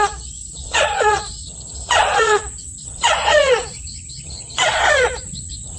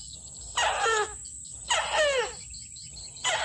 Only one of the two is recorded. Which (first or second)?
second